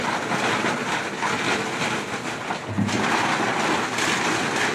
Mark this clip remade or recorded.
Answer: recorded